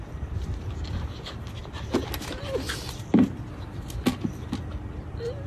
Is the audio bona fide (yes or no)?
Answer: yes